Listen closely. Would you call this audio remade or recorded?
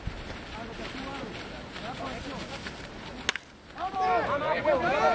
recorded